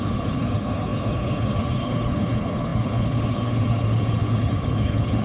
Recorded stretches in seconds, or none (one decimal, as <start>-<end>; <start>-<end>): none